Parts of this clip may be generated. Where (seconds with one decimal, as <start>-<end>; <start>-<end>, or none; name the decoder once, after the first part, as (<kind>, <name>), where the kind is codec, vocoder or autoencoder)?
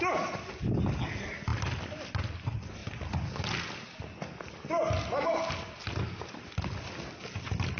none